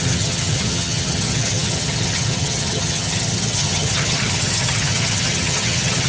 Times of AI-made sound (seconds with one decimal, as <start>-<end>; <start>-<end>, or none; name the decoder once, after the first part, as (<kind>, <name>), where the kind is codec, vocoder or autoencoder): 0.0-6.1 (vocoder, HiFi-GAN)